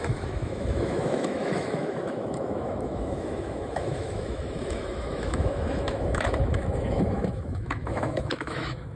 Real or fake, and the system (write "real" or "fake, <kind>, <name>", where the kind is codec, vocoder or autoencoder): fake, autoencoder, DAC-VAE